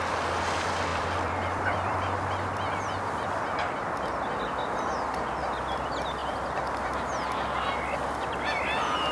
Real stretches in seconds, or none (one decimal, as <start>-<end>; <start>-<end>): 0.0-0.9; 3.8-6.2; 7.7-9.1